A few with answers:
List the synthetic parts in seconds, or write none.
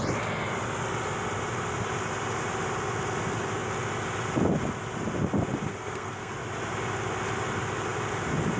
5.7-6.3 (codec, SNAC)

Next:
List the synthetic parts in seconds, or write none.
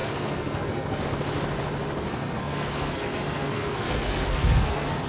0.0-1.0 (codec, SNAC); 2.0-5.1